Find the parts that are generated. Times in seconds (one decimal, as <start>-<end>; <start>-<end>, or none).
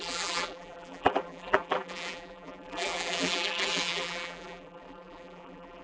0.0-5.8